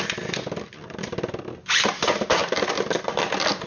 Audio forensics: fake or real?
real